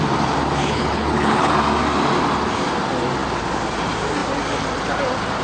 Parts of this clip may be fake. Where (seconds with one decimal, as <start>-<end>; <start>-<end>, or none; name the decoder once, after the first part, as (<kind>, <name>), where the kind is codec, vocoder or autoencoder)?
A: 0.6-1.5 (codec, HILCodec)